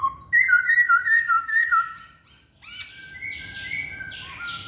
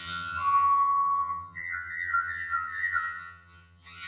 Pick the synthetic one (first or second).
second